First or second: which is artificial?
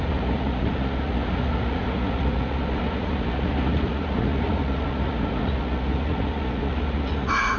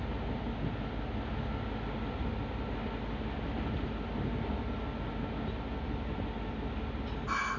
first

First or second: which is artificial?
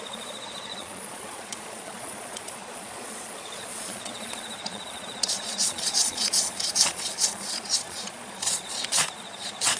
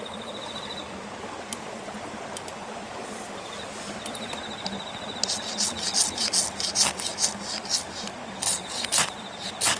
first